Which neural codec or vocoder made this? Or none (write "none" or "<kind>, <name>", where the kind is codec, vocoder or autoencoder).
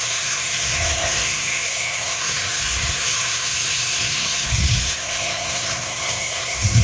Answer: codec, SNAC